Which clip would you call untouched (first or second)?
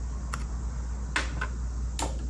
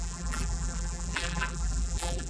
first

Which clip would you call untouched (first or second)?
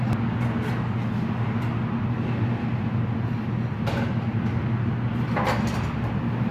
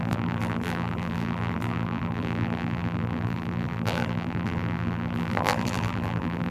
first